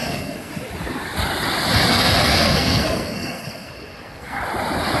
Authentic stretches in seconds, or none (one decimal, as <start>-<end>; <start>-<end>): 0.5-1.9; 4.4-5.0